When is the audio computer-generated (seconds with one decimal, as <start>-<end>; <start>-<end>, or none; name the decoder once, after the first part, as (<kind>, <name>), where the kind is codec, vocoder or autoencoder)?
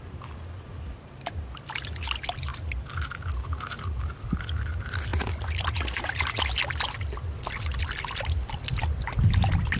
none